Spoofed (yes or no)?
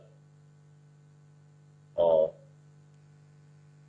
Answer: no